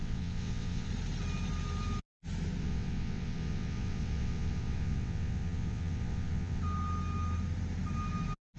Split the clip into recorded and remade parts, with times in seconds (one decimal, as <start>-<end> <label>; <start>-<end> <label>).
0.0-0.9 remade; 0.9-2.6 recorded; 2.6-6.6 remade; 6.6-8.6 recorded